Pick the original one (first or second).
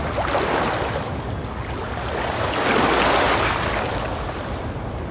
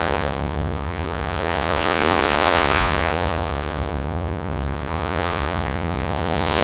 first